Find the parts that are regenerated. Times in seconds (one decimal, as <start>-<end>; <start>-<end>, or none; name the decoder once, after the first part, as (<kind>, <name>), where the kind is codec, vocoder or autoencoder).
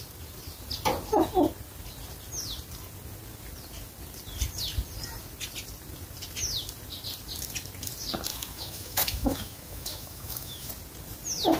8.3-10.7 (autoencoder, DAC-VAE)